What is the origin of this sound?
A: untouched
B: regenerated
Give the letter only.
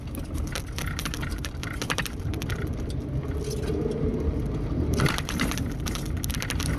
A